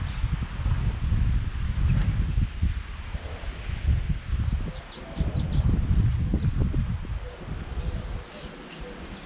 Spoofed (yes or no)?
no